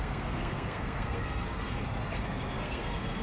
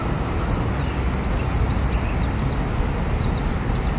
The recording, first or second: second